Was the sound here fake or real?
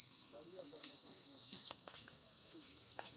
fake